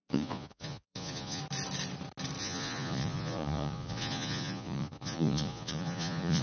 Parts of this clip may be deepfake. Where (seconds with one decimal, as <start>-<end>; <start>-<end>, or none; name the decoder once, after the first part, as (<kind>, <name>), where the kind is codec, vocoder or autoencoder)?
0.0-1.4 (vocoder, Vocos); 2.4-6.4